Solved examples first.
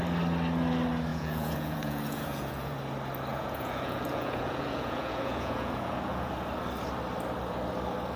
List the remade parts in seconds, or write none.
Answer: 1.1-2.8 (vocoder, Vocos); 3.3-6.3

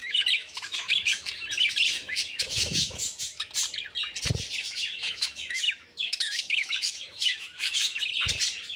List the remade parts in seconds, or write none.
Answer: 0.0-1.3 (autoencoder, DAC-VAE); 1.9-3.5; 4.6-8.0

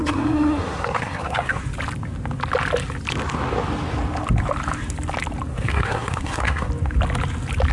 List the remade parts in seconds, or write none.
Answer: 0.0-1.6 (codec, SNAC); 5.5-6.7